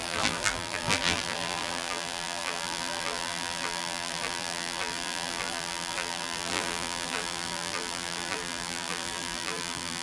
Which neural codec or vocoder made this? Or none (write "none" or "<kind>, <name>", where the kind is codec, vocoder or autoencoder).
vocoder, BigVGAN v2